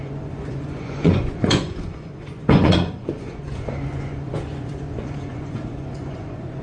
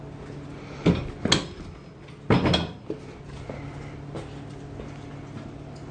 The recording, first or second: second